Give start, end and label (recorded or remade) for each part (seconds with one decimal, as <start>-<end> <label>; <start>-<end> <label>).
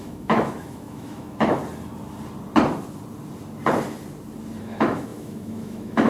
0.0-1.6 remade; 1.6-4.6 recorded; 4.6-6.1 remade